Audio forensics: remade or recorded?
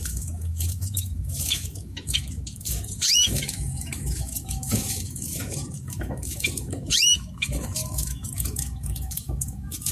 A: remade